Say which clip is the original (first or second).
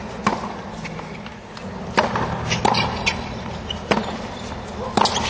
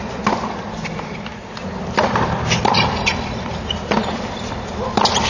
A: first